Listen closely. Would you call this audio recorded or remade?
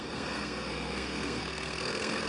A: remade